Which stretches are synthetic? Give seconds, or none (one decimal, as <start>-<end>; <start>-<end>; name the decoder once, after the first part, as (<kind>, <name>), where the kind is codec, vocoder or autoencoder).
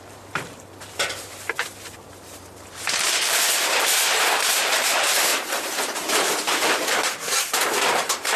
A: 0.0-8.4 (vocoder, BigVGAN v2)